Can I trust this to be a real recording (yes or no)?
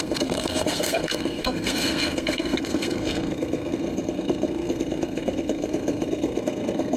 no